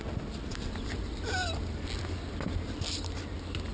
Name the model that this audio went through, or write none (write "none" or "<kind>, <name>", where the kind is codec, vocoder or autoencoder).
none